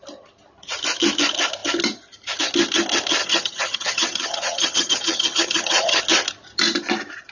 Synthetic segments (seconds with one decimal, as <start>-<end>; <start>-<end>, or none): 3.2-6.0